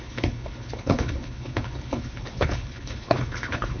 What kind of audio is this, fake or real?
fake